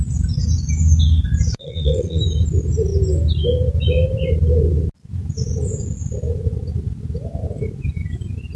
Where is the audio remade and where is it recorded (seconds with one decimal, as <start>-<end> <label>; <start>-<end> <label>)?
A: 0.0-1.5 recorded; 1.5-2.2 remade; 2.2-8.6 recorded

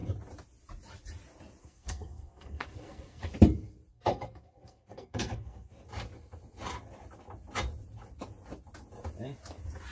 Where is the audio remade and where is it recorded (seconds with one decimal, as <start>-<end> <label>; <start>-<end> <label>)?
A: 0.0-1.6 recorded; 1.6-3.3 remade; 3.3-3.9 recorded; 3.9-5.7 remade; 5.7-9.9 recorded

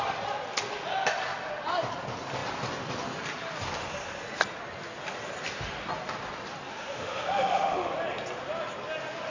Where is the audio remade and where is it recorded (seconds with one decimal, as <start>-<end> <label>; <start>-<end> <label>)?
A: 0.0-6.7 recorded; 6.7-7.9 remade; 7.9-9.3 recorded

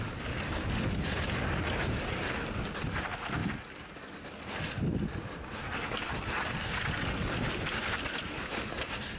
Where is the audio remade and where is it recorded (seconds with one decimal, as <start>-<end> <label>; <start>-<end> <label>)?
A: 0.0-9.2 recorded

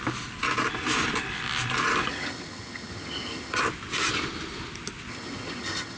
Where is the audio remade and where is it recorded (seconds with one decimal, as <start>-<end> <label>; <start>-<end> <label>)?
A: 0.0-2.1 recorded; 2.1-3.6 remade; 3.6-5.1 recorded; 5.1-6.0 remade

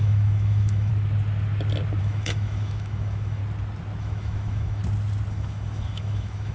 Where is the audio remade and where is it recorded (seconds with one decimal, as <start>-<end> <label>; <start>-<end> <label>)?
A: 0.0-0.9 remade; 0.9-2.0 recorded; 2.0-3.4 remade; 3.4-4.0 recorded; 4.0-4.8 remade; 4.8-5.3 recorded; 5.3-6.5 remade